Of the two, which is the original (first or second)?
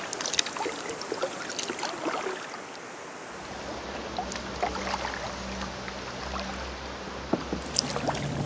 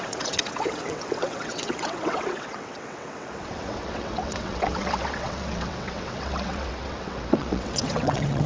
first